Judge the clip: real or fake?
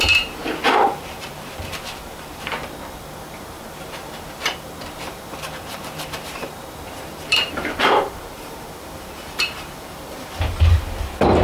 fake